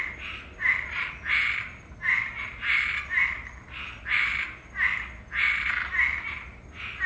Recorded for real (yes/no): yes